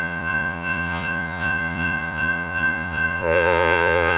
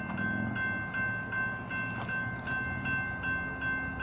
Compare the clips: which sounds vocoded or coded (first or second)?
first